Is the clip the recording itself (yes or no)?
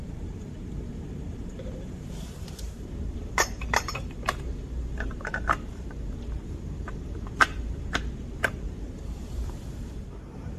no